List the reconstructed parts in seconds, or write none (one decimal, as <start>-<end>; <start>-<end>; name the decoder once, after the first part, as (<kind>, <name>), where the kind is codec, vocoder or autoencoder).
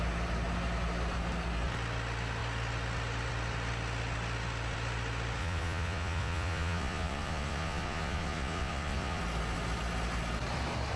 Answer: 5.4-9.2 (vocoder, Vocos)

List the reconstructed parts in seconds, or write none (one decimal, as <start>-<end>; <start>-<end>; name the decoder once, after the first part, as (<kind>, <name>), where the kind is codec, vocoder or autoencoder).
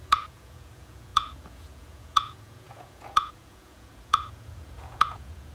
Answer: 0.0-5.5 (vocoder, Vocos)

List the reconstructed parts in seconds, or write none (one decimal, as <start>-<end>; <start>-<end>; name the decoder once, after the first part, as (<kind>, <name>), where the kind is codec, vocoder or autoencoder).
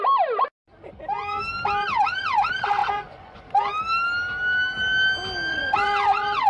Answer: 2.8-3.4 (vocoder, Vocos); 5.5-6.5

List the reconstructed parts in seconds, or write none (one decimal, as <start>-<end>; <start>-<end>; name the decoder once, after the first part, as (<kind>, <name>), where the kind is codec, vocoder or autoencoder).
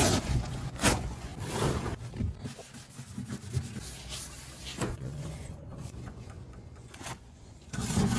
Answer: 0.0-1.3 (vocoder, Vocos); 4.8-8.2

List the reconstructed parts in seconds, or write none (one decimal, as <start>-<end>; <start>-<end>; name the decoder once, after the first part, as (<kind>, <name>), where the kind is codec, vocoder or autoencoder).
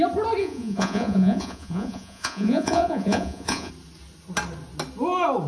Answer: 0.4-3.7 (vocoder, Vocos)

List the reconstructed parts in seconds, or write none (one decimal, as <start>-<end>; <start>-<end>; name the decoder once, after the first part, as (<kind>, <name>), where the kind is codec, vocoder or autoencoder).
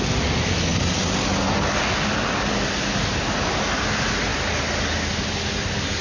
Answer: none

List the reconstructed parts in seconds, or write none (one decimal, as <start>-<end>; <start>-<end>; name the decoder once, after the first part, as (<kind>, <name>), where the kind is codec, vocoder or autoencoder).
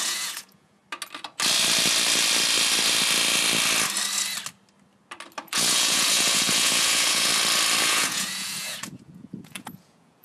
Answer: 0.0-0.8 (vocoder, Vocos); 5.4-7.3; 7.8-10.2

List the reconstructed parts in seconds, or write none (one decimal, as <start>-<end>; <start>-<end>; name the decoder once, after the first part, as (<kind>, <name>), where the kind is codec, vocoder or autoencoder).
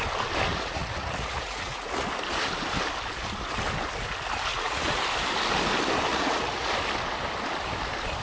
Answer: 0.5-2.1 (vocoder, Vocos); 4.5-5.0; 6.1-6.7